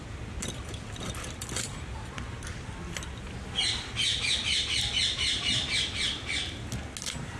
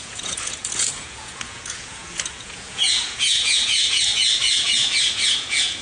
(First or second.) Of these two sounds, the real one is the first